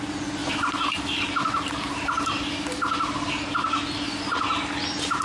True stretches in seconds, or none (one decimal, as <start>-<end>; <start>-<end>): 0.0-5.2